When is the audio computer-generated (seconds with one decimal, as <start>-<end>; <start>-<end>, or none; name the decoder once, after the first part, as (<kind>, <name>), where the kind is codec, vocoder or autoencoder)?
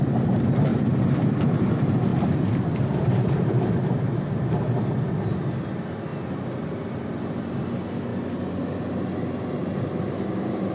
0.7-1.6 (vocoder, BigVGAN v2); 2.1-4.6